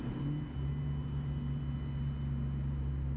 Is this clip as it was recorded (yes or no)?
yes